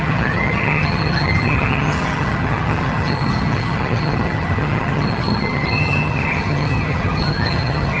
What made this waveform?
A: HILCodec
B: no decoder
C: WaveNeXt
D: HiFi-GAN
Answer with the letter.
D